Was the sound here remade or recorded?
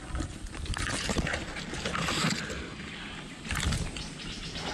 recorded